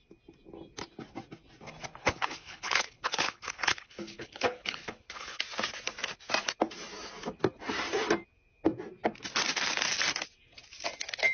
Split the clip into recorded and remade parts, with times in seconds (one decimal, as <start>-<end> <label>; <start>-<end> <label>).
0.0-2.0 recorded; 2.0-5.4 remade; 5.4-11.3 recorded